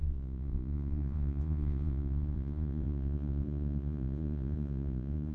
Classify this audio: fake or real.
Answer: fake